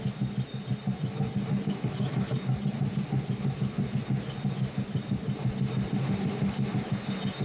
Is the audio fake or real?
real